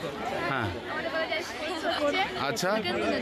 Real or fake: real